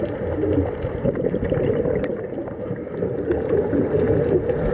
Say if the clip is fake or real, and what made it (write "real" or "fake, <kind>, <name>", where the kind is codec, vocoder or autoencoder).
real